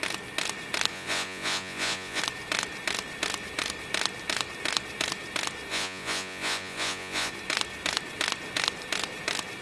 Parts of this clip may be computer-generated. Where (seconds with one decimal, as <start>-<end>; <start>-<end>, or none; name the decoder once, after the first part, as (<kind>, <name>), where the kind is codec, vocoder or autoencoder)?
0.9-2.2 (vocoder, Vocos); 5.7-7.3